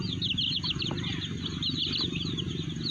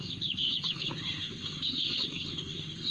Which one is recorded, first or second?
first